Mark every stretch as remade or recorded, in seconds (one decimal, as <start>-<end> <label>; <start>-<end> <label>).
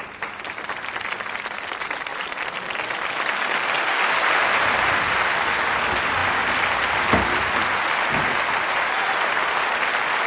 0.0-10.3 recorded